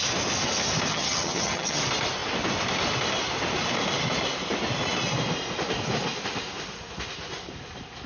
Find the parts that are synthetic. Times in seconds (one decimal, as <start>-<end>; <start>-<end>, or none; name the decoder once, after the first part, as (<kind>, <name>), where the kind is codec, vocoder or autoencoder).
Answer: 0.9-1.8 (vocoder, HiFi-GAN)